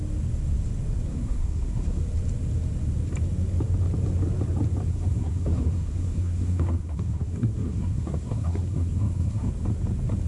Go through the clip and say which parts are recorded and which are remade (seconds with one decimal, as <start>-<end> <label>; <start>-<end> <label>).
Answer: 0.0-1.1 recorded; 1.1-2.0 remade; 2.0-4.9 recorded; 4.9-9.5 remade; 9.5-10.3 recorded